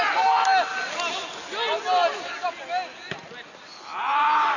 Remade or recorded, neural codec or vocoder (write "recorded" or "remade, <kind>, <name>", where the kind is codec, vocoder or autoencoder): recorded